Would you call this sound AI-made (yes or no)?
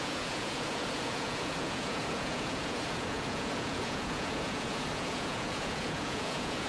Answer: yes